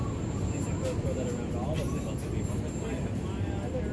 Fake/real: real